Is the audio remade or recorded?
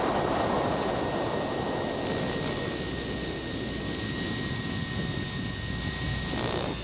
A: recorded